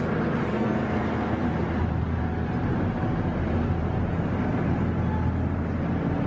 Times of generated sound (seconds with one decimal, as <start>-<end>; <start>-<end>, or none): 0.5-1.4